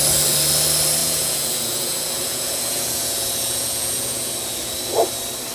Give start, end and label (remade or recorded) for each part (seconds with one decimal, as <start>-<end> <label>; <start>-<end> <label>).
0.0-1.0 recorded; 1.0-4.3 remade; 4.3-5.5 recorded